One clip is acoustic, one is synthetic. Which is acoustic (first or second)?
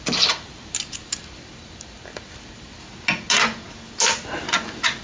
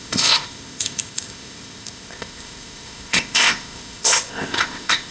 first